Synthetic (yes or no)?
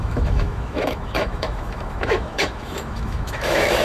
yes